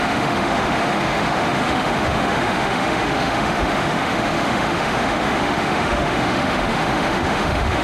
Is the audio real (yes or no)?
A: no